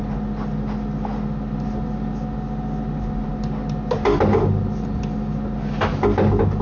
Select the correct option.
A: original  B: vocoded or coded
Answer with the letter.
A